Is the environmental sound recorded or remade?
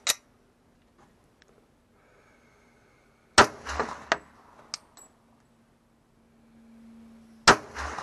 recorded